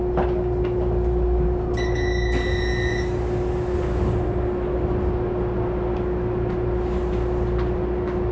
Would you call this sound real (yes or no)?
yes